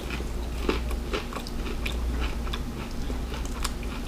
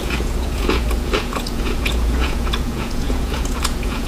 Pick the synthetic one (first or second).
second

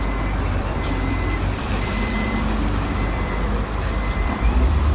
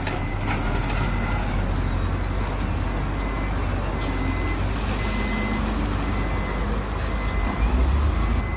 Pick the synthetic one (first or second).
first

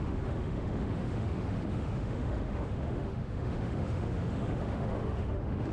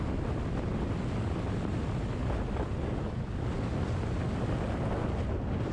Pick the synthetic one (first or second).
first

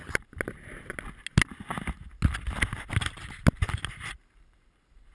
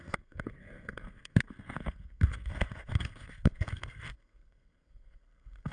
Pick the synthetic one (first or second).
second